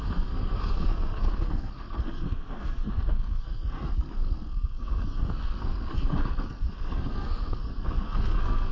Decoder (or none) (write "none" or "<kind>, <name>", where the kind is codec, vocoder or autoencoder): codec, SNAC